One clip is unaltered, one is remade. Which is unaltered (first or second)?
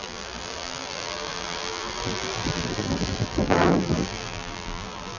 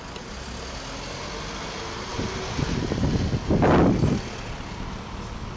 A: second